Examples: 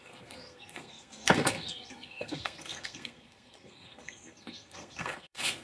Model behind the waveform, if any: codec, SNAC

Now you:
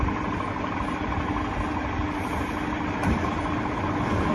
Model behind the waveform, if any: none